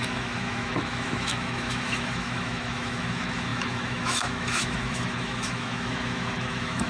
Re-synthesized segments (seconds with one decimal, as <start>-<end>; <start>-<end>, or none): 0.0-6.9